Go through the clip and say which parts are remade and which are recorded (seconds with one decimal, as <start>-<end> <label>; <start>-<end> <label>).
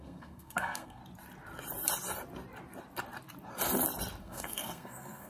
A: 0.0-1.0 remade; 1.0-4.2 recorded; 4.2-5.3 remade